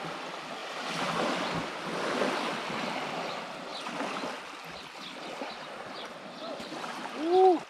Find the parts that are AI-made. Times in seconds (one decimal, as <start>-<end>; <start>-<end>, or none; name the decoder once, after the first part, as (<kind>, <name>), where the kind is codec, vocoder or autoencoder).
none

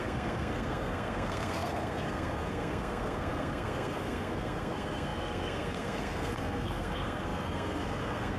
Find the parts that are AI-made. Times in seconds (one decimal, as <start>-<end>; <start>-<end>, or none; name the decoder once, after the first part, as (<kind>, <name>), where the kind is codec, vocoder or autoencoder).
0.0-8.4 (codec, SNAC)

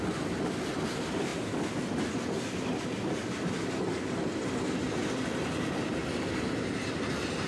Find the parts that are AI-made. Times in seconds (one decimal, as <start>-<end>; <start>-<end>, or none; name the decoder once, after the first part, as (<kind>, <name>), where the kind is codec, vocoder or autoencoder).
none

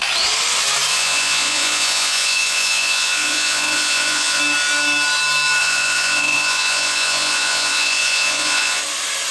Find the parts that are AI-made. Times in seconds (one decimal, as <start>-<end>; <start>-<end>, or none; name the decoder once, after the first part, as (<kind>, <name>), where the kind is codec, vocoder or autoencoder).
0.9-4.4 (vocoder, Vocos); 5.6-8.8

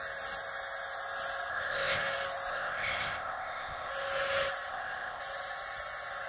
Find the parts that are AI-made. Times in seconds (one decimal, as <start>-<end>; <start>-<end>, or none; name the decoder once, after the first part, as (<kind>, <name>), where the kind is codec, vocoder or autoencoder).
1.5-2.0 (codec, ZipCodec); 2.5-3.9; 4.7-5.2

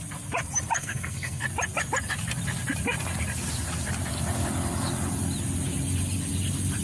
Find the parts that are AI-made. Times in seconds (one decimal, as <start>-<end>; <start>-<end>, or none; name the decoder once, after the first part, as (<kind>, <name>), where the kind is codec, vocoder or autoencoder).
0.8-1.4 (codec, SNAC)